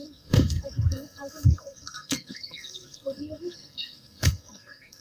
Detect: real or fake fake